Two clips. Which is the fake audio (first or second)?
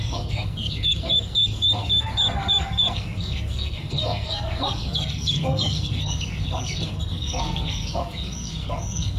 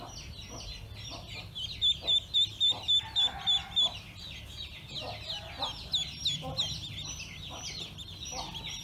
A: first